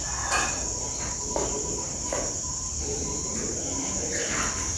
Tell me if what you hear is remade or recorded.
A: recorded